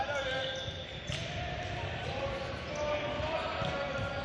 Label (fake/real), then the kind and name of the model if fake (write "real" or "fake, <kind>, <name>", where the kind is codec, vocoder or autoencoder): real